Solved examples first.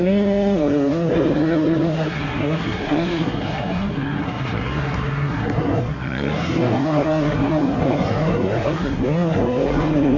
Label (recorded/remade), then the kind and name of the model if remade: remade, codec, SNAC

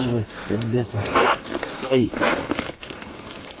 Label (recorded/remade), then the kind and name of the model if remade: remade, codec, SNAC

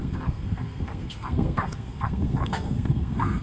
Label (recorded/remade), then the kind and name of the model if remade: remade, codec, SNAC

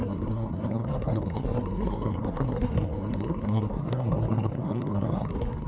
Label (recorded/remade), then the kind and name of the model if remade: remade, codec, SNAC